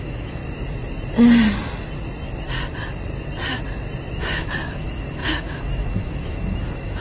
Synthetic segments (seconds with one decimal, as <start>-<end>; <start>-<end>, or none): 0.0-0.4; 4.2-7.0